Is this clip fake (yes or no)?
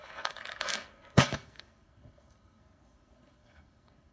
yes